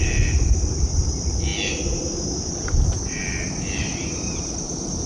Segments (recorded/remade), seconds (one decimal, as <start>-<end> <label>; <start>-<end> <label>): 0.0-1.5 remade; 1.5-2.4 recorded; 2.4-3.2 remade; 3.2-3.8 recorded; 3.8-5.1 remade